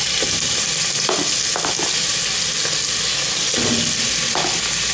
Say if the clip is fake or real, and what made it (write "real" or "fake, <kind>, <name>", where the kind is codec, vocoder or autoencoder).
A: real